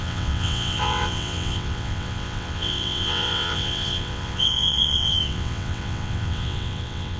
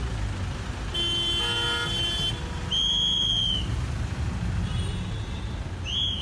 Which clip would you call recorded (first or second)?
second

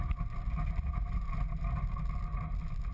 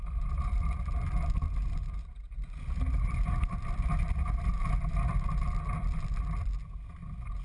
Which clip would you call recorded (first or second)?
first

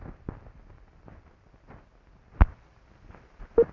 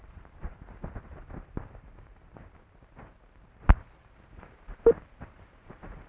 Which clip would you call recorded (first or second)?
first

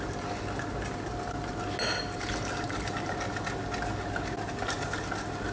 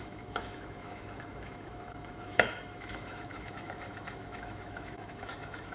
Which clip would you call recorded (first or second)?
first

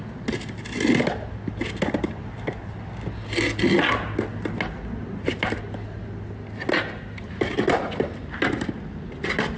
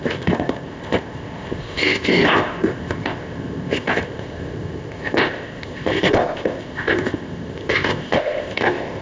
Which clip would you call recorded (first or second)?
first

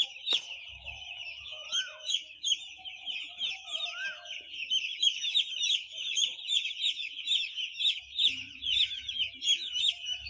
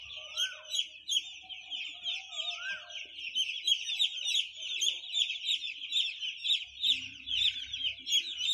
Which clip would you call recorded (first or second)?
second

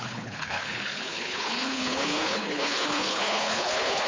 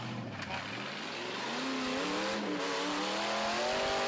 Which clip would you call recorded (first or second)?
second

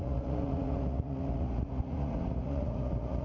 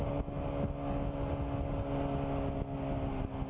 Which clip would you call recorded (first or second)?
second